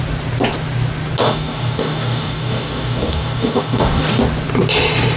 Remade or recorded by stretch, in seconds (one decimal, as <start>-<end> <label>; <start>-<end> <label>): 0.0-1.2 recorded; 1.2-4.2 remade; 4.2-5.2 recorded

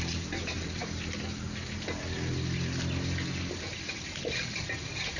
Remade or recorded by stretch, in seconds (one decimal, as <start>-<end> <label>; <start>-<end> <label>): 0.0-5.2 recorded

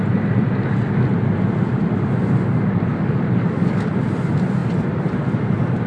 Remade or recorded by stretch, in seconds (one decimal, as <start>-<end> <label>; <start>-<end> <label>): 0.0-2.9 recorded; 2.9-3.9 remade; 3.9-5.9 recorded

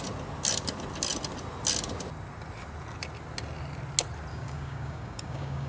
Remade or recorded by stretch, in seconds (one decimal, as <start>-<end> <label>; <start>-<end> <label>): 0.0-4.3 recorded; 4.3-5.7 remade

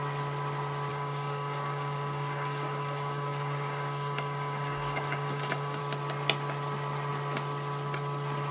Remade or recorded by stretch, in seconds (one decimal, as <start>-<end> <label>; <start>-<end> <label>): 0.0-0.9 recorded; 0.9-5.8 remade; 5.8-8.5 recorded